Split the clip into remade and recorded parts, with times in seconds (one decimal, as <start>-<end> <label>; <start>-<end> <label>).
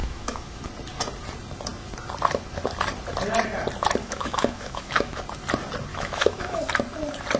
0.0-0.6 remade; 0.6-4.0 recorded; 4.0-5.2 remade; 5.2-5.9 recorded; 5.9-6.6 remade; 6.6-7.4 recorded